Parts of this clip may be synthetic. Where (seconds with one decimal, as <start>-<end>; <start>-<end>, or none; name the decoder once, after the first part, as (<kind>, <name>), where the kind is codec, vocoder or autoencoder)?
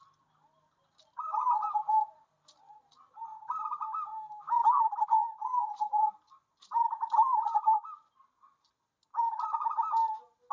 4.1-8.7 (vocoder, BigVGAN v2)